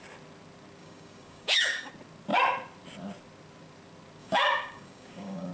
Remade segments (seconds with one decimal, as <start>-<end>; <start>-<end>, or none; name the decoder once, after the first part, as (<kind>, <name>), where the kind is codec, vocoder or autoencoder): 0.8-1.9 (codec, DAC); 4.2-5.5